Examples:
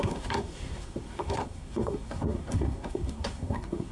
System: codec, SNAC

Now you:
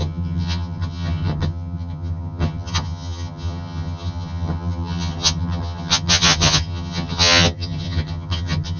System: vocoder, HiFi-GAN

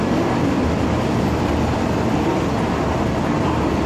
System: none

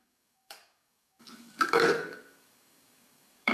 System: codec, DAC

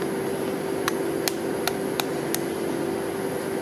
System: none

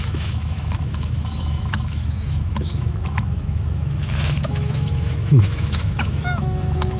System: autoencoder, DAC-VAE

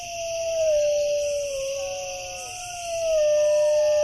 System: none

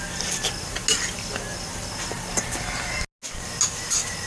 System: none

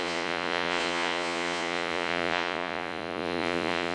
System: vocoder, Vocos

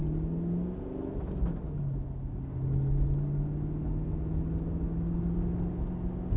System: none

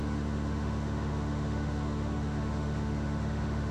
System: autoencoder, DAC-VAE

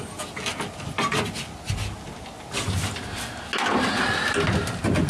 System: none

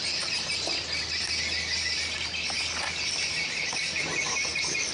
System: none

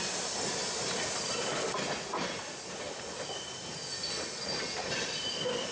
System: none